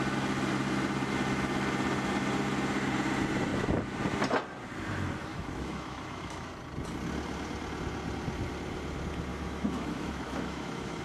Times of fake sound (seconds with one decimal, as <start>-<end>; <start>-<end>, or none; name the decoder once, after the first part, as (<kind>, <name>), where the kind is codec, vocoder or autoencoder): 5.3-6.5 (autoencoder, DAC-VAE); 9.3-11.0